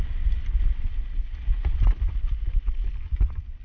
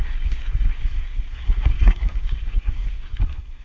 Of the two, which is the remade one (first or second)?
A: second